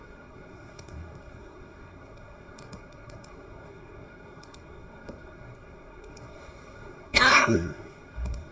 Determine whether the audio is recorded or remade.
remade